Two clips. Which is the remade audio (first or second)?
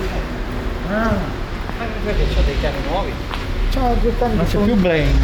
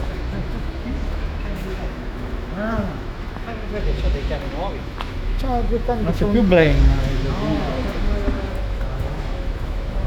second